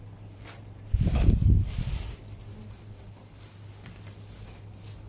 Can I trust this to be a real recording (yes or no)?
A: yes